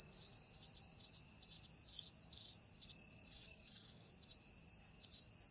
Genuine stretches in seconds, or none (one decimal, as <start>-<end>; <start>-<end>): 0.0-3.3; 4.1-5.5